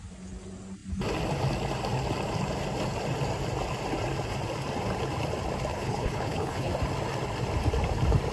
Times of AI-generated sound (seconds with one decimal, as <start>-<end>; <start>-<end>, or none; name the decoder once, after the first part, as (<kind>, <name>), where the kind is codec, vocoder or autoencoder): 5.7-6.7 (codec, HILCodec)